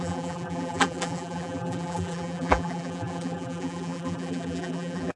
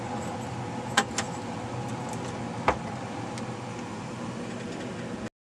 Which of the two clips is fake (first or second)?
first